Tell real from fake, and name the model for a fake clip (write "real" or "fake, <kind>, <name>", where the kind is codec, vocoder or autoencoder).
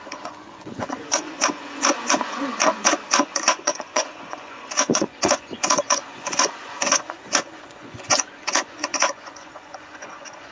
fake, vocoder, Vocos